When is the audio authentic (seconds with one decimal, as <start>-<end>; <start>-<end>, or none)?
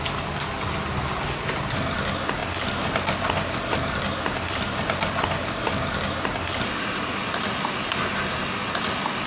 0.0-9.3